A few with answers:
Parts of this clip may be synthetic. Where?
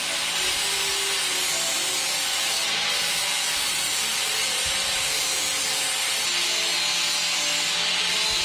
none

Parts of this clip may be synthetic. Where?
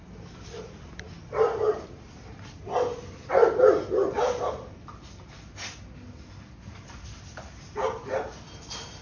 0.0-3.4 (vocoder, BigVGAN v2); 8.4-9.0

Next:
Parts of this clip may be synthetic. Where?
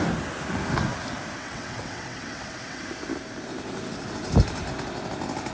1.4-2.8 (vocoder, WaveNeXt)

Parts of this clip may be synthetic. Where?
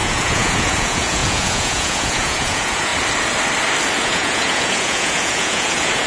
0.0-2.9 (vocoder, Vocos); 4.0-6.1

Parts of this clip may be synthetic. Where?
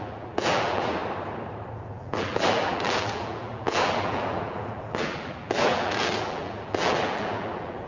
0.0-1.0 (vocoder, BigVGAN v2); 1.9-7.9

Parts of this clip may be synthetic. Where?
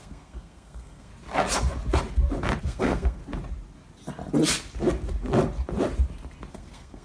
0.0-1.1 (codec, SNAC); 2.6-3.2; 6.5-7.0